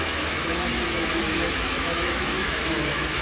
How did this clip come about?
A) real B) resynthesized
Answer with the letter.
B